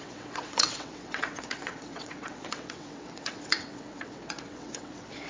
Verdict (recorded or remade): remade